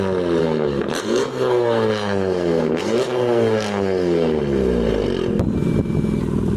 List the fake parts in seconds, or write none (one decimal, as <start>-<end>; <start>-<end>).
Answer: 0.4-4.4